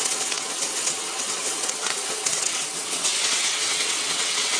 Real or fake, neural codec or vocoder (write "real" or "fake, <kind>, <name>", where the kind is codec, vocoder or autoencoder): fake, vocoder, WaveNeXt